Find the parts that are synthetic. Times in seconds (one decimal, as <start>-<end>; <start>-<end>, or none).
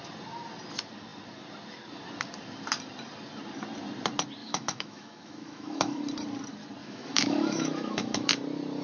4.4-6.0; 6.8-8.3